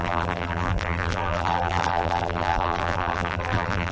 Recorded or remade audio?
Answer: remade